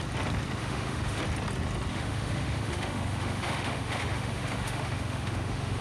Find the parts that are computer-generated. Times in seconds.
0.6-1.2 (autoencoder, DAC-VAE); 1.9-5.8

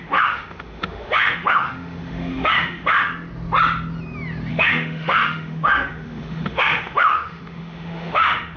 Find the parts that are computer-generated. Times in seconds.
0.0-3.1 (autoencoder, DAC-VAE); 4.5-8.6

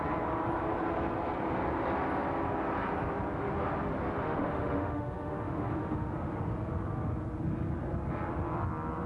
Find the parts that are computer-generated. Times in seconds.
4.2-6.1 (autoencoder, DAC-VAE)

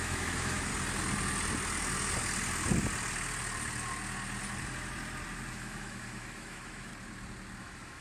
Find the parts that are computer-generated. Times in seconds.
0.0-0.7 (autoencoder, DAC-VAE); 5.5-6.9; 7.6-8.0